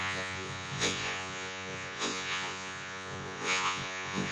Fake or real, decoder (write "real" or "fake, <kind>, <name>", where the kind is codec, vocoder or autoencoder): fake, vocoder, Vocos